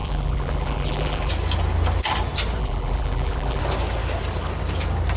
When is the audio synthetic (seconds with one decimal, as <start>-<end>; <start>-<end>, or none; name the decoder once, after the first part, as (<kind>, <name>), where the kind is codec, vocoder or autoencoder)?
0.0-1.3 (vocoder, BigVGAN v2); 2.6-3.6